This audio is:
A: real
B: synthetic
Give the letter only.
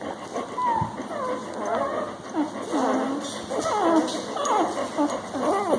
A